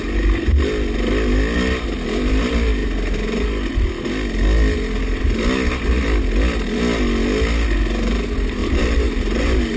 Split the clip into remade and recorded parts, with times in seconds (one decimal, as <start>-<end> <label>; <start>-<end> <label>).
0.0-8.6 recorded; 8.6-9.8 remade